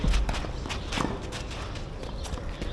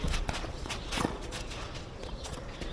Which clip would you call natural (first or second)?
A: first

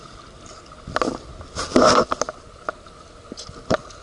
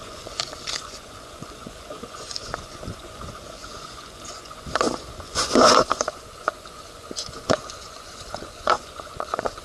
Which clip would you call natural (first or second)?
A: first